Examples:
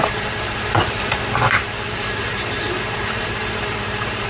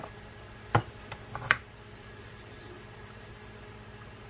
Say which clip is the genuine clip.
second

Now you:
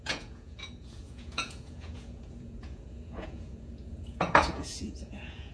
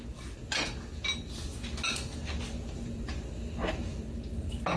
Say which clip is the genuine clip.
second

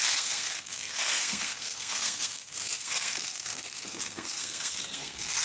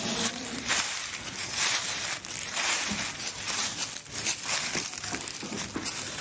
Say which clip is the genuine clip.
second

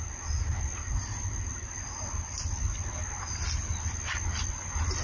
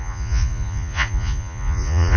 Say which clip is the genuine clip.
first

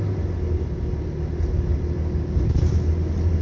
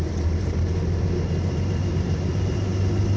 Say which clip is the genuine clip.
first